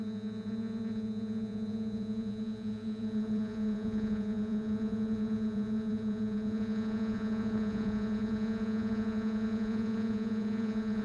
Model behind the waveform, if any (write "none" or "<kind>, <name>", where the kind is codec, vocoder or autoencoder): vocoder, Vocos